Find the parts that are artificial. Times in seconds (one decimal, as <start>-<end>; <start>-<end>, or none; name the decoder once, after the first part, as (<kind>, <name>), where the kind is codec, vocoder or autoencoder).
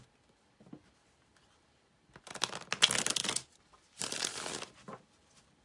none